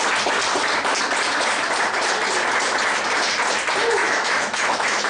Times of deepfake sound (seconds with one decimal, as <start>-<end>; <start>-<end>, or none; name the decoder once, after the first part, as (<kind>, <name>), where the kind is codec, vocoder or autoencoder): 4.0-5.1 (autoencoder, DAC-VAE)